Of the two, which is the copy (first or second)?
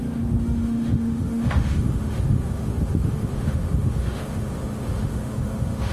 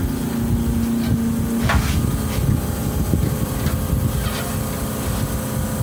first